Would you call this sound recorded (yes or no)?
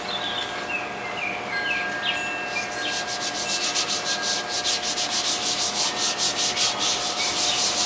yes